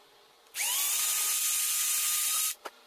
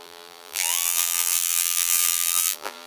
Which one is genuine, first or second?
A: first